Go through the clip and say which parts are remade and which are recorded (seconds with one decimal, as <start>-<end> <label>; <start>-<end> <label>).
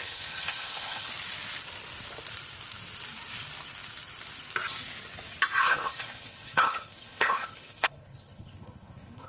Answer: 0.0-1.1 remade; 1.1-5.6 recorded; 5.6-9.3 remade